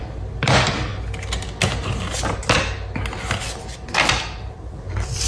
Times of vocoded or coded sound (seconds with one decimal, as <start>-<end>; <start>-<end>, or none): 0.0-0.9; 3.4-5.3